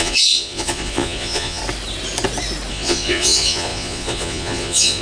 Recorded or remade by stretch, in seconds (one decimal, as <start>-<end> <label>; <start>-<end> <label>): 0.0-1.6 remade; 1.6-2.7 recorded; 2.7-5.0 remade